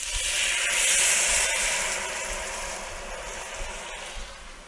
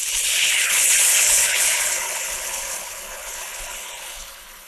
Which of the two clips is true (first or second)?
first